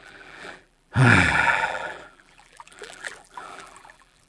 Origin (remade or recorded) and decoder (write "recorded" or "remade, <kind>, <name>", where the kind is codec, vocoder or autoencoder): remade, vocoder, BigVGAN v2